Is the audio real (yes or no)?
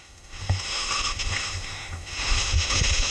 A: no